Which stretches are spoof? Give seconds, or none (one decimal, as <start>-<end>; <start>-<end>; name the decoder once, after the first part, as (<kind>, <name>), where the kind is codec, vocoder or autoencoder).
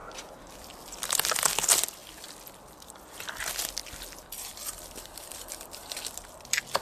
none